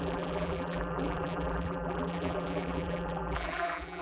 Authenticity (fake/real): fake